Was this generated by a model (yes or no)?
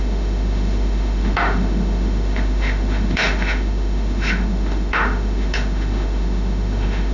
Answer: yes